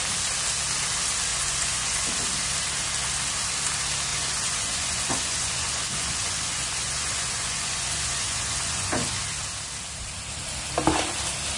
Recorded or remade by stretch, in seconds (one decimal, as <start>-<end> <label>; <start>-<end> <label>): 0.0-1.3 recorded; 1.3-2.1 remade; 2.1-4.1 recorded; 4.1-9.2 remade; 9.2-11.6 recorded

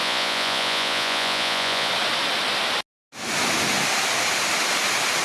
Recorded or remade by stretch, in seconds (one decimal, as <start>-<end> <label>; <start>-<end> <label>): 0.0-1.9 remade; 1.9-5.2 recorded

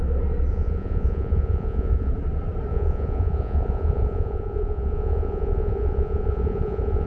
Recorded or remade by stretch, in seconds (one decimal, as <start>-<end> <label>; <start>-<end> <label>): 0.0-0.5 recorded; 0.5-2.1 remade; 2.1-2.7 recorded; 2.7-7.1 remade

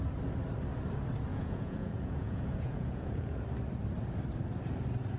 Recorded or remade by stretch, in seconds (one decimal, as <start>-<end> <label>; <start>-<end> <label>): 0.0-1.3 recorded; 1.3-3.4 remade; 3.4-5.2 recorded

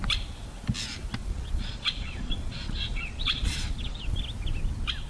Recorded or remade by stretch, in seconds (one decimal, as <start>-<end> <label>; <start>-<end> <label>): 0.0-1.2 recorded; 1.2-4.2 remade; 4.2-5.1 recorded

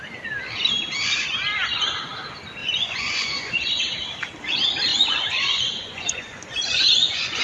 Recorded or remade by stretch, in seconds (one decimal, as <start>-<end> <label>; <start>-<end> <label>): 0.0-2.6 recorded; 2.6-3.8 remade; 3.8-4.9 recorded; 4.9-7.4 remade